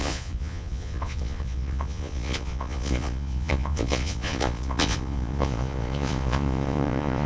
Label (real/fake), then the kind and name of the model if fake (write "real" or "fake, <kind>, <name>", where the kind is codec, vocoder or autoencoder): fake, vocoder, Vocos